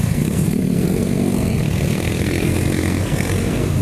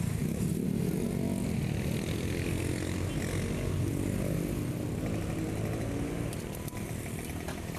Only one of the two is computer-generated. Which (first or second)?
first